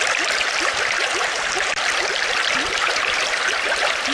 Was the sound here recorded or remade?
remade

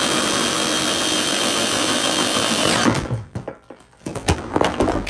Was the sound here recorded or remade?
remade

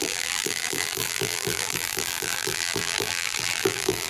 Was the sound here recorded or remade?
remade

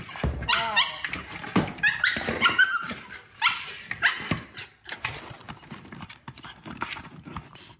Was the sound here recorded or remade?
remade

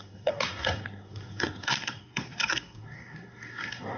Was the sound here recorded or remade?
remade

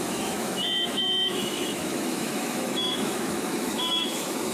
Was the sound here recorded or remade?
remade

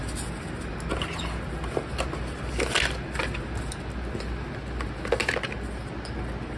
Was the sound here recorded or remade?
recorded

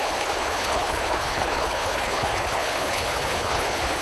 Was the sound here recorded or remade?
remade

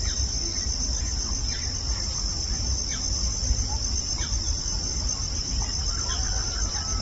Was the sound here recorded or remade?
recorded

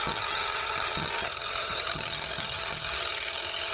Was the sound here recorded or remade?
remade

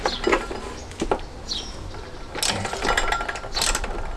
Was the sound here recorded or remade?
recorded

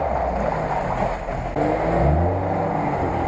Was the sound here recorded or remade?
recorded